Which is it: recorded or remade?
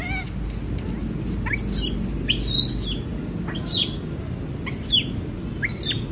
recorded